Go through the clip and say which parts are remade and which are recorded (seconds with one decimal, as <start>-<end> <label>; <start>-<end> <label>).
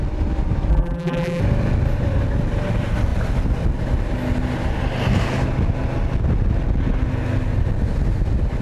0.0-0.7 recorded; 0.7-1.4 remade; 1.4-8.6 recorded